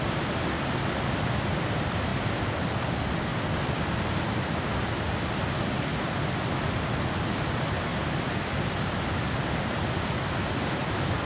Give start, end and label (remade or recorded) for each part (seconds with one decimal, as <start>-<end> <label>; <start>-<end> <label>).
0.0-11.3 recorded